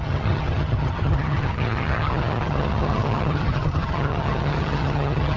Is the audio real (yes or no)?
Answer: no